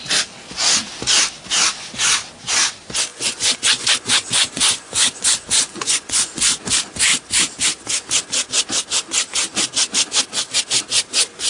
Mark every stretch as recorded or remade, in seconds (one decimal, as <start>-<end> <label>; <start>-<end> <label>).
0.0-3.1 recorded; 3.1-6.6 remade; 6.6-11.5 recorded